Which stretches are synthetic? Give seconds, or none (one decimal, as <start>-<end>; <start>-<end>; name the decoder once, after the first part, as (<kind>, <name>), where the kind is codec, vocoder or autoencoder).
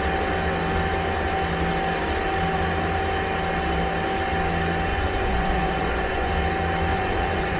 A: 4.9-6.3 (vocoder, Vocos); 6.9-7.6